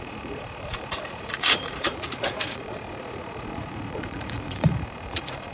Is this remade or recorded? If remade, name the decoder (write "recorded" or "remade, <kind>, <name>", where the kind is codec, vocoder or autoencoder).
remade, vocoder, Vocos